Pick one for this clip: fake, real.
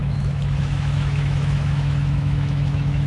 fake